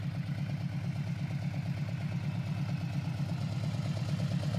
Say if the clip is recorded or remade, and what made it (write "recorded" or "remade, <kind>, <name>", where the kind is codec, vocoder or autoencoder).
recorded